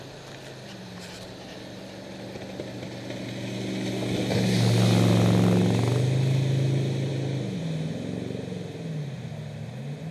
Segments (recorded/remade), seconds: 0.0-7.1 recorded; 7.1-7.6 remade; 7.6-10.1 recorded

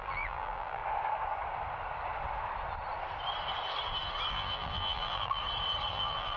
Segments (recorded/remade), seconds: 0.0-0.8 remade; 0.8-4.3 recorded; 4.3-5.4 remade; 5.4-5.9 recorded; 5.9-6.4 remade

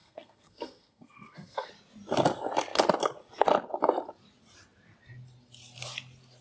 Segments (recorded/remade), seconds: 0.0-1.7 remade; 1.7-6.4 recorded